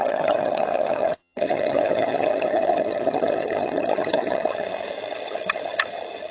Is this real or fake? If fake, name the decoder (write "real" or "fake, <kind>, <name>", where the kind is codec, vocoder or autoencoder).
fake, vocoder, HiFi-GAN